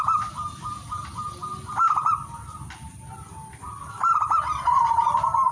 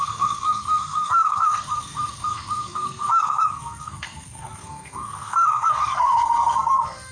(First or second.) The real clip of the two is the first